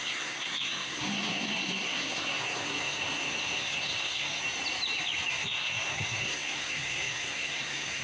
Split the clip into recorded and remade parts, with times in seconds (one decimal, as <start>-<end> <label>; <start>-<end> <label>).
0.0-4.4 remade; 4.4-5.3 recorded; 5.3-8.0 remade